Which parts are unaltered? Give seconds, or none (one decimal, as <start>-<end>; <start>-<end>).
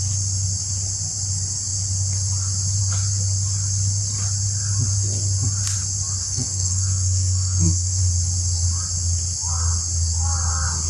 0.0-6.2; 8.0-10.9